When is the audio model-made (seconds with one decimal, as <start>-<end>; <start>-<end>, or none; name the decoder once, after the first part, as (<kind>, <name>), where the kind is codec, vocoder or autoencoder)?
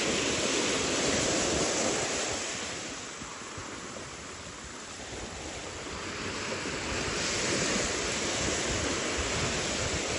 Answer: none